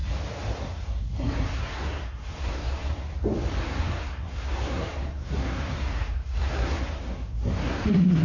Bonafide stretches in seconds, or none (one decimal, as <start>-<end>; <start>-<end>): 0.0-0.6; 3.1-3.6